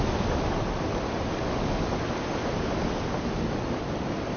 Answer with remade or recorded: recorded